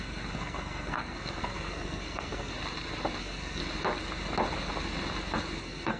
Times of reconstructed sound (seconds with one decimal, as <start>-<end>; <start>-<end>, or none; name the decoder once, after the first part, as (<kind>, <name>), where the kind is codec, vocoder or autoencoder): 0.0-2.5 (codec, SNAC); 3.2-3.6; 5.6-6.0